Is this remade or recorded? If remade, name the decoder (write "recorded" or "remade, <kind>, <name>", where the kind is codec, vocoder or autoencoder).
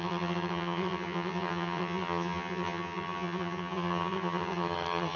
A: remade, vocoder, HiFi-GAN